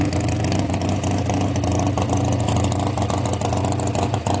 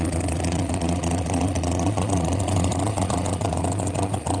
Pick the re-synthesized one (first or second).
second